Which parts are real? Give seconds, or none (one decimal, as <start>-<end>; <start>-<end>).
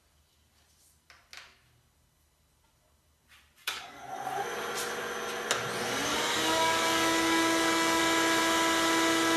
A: 0.0-3.6; 4.1-6.1; 8.0-9.4